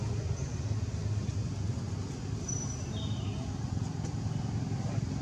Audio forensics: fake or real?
real